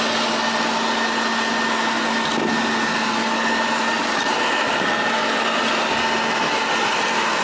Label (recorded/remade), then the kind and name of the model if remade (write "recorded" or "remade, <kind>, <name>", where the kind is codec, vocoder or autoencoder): recorded